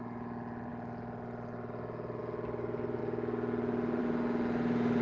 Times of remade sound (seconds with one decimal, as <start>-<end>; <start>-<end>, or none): none